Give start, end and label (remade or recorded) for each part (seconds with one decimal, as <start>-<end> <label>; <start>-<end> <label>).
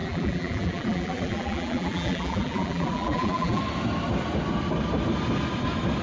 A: 0.0-3.6 remade; 3.6-6.0 recorded